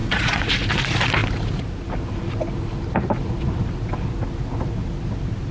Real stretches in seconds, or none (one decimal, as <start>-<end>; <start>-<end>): 0.5-5.5